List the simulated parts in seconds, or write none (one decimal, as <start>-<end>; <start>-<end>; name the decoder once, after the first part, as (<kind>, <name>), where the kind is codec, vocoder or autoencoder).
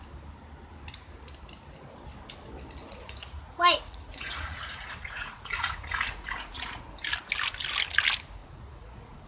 2.8-6.8 (vocoder, Vocos); 8.4-9.3